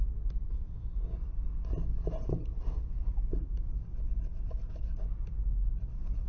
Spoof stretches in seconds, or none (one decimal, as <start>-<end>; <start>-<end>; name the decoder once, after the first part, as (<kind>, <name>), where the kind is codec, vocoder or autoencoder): none